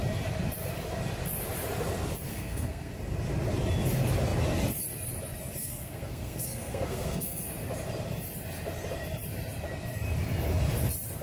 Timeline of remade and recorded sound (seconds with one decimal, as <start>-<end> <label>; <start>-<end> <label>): 0.0-2.3 recorded; 2.3-2.9 remade; 2.9-5.6 recorded; 5.6-7.4 remade; 7.4-11.2 recorded